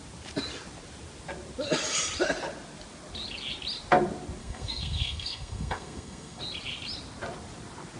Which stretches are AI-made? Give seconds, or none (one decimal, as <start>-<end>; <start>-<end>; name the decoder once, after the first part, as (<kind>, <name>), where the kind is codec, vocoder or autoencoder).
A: 4.4-6.4 (codec, SNAC)